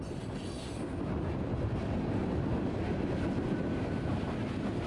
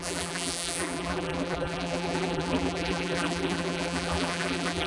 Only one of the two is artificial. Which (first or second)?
second